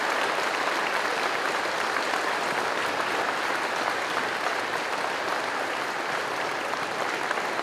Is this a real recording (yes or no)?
yes